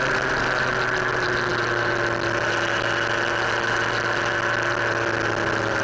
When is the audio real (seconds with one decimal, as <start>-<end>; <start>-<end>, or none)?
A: 0.0-5.8